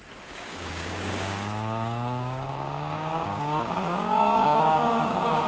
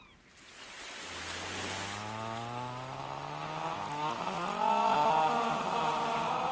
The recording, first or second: second